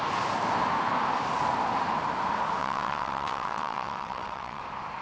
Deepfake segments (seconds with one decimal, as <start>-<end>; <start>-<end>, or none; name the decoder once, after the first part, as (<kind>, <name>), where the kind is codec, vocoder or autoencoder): 2.6-4.6 (vocoder, WaveNeXt)